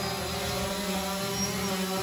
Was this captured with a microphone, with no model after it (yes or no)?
yes